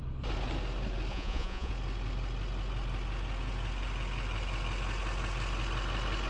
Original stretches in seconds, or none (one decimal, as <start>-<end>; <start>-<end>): 0.0-1.1; 1.7-6.3